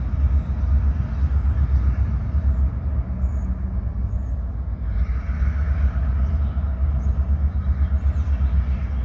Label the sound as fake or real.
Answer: real